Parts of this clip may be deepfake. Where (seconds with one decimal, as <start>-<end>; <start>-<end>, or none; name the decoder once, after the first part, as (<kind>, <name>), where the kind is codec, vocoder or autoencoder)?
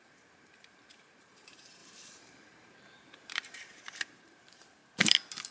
0.0-4.8 (vocoder, BigVGAN v2)